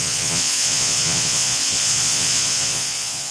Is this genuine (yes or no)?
no